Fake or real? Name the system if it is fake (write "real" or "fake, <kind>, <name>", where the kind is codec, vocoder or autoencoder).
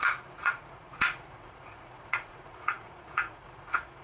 fake, vocoder, Vocos